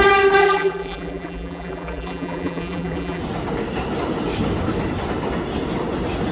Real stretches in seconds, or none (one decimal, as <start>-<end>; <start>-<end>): 0.0-0.4; 3.2-6.3